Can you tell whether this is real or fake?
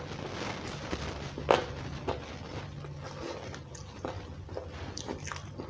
real